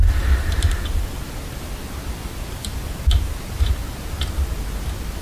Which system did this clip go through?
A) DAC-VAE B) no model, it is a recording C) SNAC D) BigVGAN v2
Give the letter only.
B